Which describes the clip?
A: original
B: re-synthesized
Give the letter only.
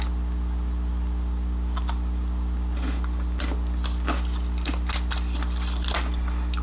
B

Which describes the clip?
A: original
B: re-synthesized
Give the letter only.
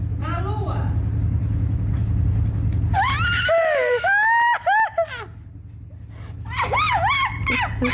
A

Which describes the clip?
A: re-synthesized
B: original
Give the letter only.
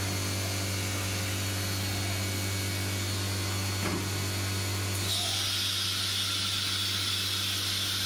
B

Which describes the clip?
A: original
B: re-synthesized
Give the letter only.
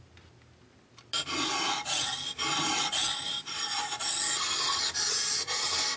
A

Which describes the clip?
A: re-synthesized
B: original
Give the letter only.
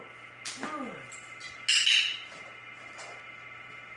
B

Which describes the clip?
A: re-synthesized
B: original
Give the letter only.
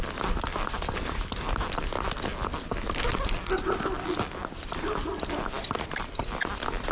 B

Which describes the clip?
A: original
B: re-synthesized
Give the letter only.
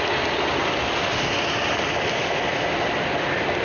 A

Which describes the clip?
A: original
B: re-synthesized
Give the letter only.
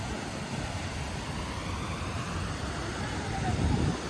A